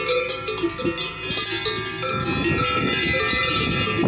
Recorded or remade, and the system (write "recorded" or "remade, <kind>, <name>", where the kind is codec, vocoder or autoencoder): recorded